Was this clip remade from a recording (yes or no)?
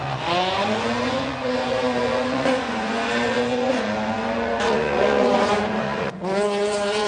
yes